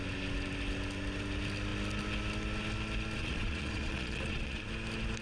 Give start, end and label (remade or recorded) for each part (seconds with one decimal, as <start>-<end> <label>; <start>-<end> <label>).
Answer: 0.0-3.2 recorded; 3.2-4.7 remade; 4.7-5.2 recorded